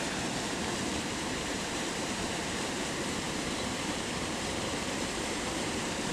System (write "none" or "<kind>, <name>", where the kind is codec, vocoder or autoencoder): vocoder, BigVGAN v2